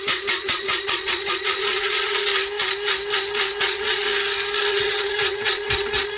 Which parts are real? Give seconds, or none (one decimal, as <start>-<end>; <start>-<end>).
2.3-3.6; 4.1-4.7